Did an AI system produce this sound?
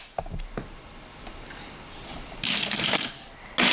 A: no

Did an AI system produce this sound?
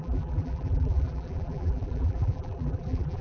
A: yes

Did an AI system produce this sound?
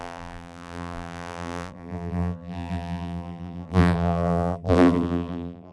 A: yes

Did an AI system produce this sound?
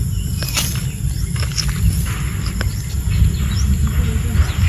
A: no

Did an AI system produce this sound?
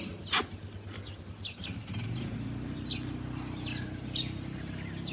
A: no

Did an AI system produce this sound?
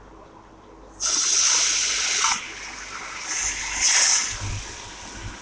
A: no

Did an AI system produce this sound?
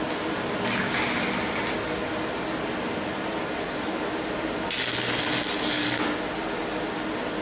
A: no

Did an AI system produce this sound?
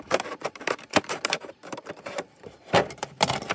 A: yes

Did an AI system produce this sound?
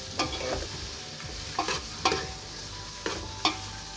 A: no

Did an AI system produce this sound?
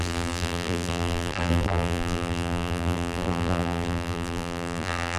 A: yes